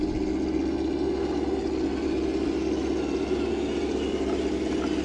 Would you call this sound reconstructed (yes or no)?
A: no